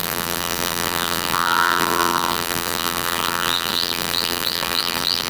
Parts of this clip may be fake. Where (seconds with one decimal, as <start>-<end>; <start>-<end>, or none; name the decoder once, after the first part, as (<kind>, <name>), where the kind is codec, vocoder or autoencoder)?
0.0-5.3 (vocoder, BigVGAN v2)